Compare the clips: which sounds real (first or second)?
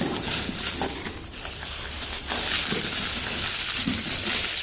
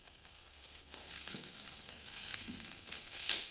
first